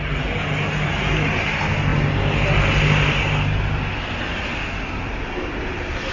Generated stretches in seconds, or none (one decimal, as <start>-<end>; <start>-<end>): none